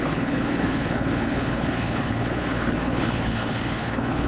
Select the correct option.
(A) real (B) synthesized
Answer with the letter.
B